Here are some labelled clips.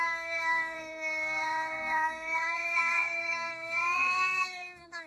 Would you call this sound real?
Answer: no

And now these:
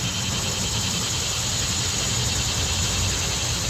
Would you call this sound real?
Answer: yes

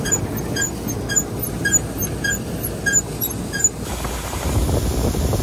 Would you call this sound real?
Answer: yes